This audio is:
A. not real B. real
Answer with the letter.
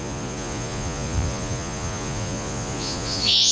A